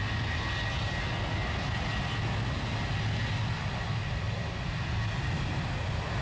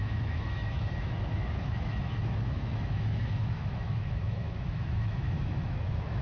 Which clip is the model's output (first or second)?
second